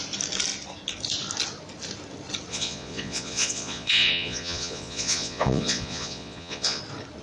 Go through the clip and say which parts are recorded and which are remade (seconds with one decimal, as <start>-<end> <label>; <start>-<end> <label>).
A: 0.0-2.5 recorded; 2.5-6.8 remade; 6.8-7.2 recorded